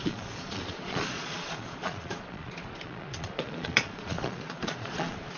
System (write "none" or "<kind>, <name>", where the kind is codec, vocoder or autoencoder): vocoder, Vocos